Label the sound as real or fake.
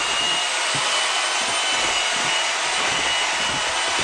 real